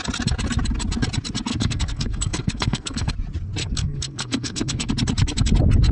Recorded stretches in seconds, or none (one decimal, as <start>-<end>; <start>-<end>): 0.0-1.5; 3.1-3.6; 4.9-5.9